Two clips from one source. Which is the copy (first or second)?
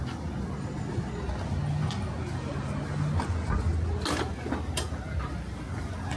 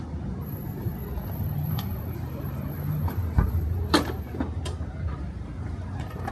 second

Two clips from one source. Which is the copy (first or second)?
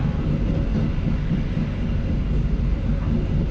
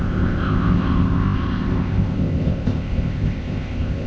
second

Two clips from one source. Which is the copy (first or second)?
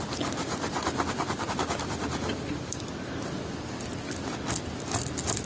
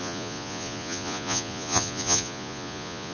second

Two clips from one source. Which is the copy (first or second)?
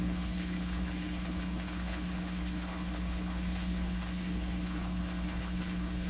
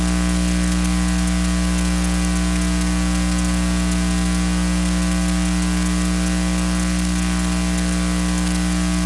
first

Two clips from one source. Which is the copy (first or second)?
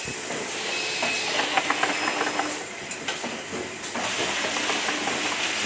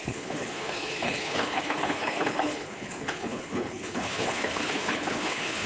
second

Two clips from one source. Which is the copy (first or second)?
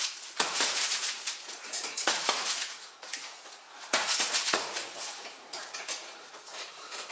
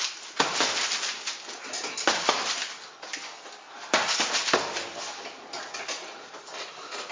first